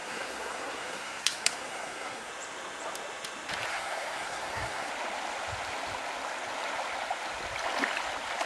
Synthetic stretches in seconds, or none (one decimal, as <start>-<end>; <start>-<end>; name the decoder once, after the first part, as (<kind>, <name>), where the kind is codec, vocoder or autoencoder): 0.0-2.3 (codec, SNAC); 3.7-4.9